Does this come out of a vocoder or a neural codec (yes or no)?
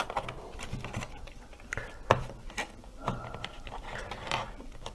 yes